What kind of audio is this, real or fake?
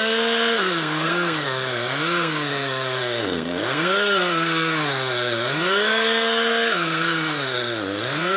fake